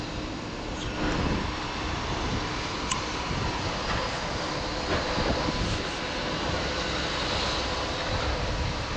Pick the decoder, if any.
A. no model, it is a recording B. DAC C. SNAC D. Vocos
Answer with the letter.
A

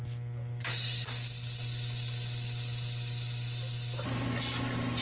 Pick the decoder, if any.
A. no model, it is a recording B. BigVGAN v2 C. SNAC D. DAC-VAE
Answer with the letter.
A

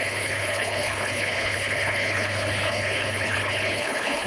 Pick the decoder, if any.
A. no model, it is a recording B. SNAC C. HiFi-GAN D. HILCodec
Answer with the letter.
D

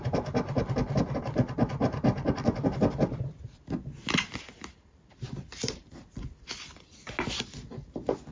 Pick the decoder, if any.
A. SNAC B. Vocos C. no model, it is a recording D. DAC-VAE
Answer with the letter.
C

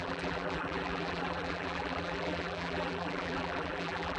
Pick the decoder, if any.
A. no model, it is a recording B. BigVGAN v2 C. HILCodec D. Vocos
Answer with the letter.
B